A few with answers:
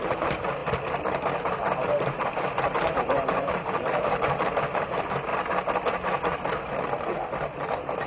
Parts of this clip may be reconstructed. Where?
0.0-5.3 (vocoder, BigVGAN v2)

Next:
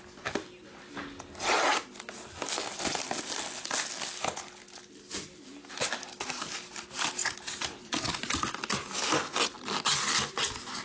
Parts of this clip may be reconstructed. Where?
7.2-7.9 (vocoder, BigVGAN v2)

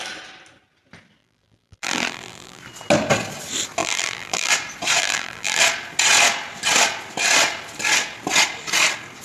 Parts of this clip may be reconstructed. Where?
1.2-2.6 (vocoder, BigVGAN v2); 3.8-4.5; 5.0-5.6

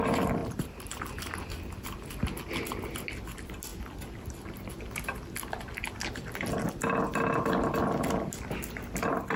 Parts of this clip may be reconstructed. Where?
0.4-1.0 (vocoder, BigVGAN v2)

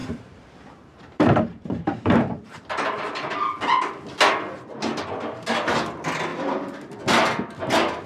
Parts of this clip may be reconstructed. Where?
0.0-2.7 (vocoder, BigVGAN v2); 6.3-7.0